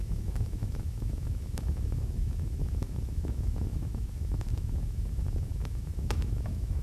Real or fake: fake